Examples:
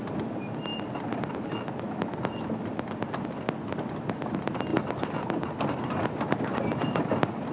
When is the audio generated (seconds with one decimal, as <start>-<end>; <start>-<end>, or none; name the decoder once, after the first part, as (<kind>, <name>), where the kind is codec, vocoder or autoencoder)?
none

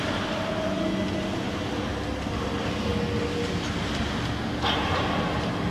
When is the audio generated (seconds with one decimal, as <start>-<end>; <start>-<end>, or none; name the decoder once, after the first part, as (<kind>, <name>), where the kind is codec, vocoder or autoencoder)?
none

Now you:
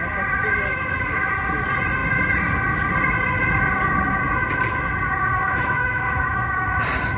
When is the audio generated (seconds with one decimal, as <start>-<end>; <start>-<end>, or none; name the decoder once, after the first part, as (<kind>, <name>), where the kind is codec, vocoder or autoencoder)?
0.7-1.3 (autoencoder, DAC-VAE); 5.3-6.8

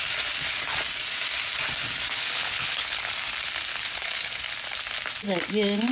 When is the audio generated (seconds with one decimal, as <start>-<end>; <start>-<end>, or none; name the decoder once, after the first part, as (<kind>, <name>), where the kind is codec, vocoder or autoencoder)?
2.2-3.1 (codec, HILCodec); 3.7-4.4